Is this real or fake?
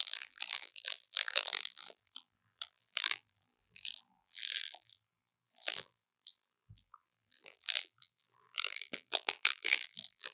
fake